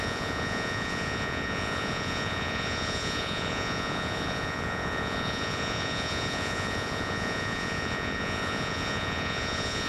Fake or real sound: fake